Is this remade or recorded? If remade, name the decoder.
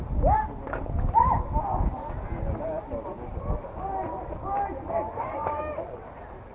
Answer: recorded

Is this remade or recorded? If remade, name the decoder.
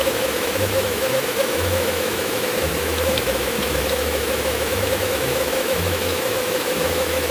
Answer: remade, autoencoder, DAC-VAE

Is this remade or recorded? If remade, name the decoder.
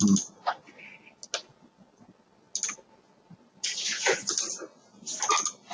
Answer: recorded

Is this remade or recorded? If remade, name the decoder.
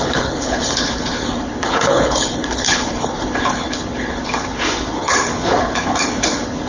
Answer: remade, codec, HILCodec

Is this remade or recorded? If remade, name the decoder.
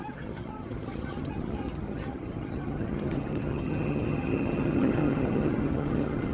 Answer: remade, vocoder, HiFi-GAN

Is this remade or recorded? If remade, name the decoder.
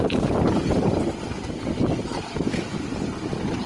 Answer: recorded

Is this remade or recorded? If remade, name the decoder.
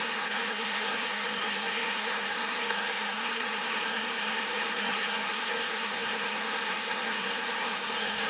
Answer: remade, codec, SNAC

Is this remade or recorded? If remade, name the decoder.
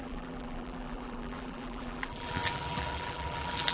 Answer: remade, vocoder, BigVGAN v2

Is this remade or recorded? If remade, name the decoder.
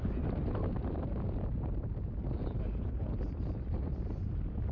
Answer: recorded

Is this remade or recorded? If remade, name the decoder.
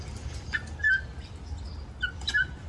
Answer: recorded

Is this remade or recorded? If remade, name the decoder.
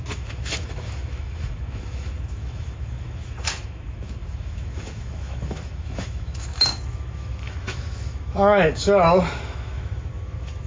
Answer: remade, autoencoder, DAC-VAE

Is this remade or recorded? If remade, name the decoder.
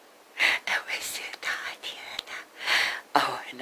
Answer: recorded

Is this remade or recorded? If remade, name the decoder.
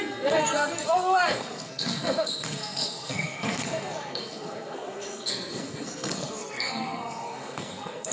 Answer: remade, codec, SNAC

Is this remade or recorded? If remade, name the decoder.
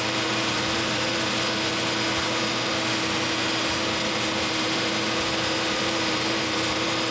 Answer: recorded